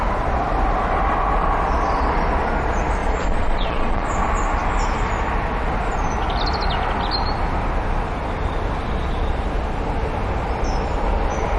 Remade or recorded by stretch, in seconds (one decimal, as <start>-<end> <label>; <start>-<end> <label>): 0.0-3.0 recorded; 3.0-4.1 remade; 4.1-11.6 recorded